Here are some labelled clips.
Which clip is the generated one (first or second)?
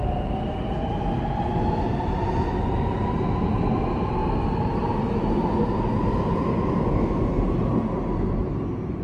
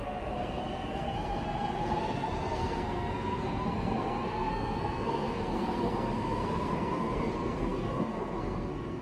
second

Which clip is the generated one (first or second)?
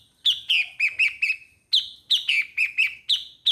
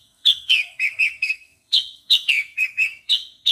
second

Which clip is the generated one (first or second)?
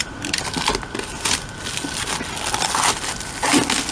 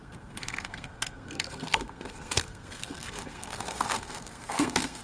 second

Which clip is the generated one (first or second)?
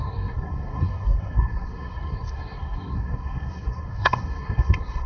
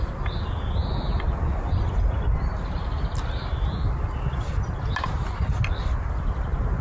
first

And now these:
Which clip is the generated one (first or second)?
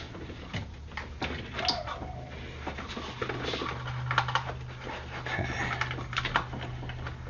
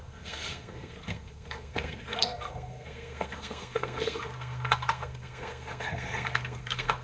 second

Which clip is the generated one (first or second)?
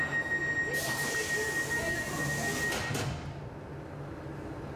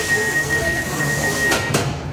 second